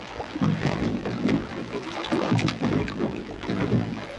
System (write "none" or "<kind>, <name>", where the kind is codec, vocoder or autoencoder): vocoder, BigVGAN v2